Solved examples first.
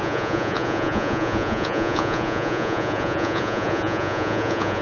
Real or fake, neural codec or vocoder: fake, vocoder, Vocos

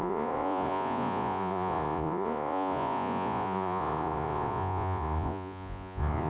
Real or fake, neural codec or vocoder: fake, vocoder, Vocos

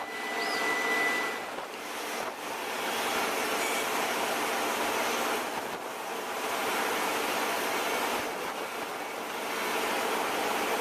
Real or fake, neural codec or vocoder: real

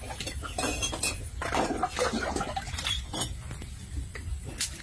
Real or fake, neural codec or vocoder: real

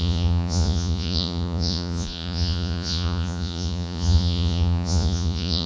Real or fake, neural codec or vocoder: fake, vocoder, Vocos